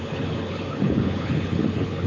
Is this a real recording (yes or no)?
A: no